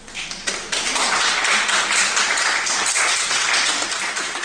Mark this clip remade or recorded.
recorded